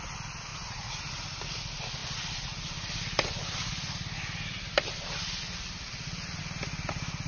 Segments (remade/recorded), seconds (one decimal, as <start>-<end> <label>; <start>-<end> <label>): 0.0-0.5 recorded; 0.5-1.0 remade; 1.0-7.3 recorded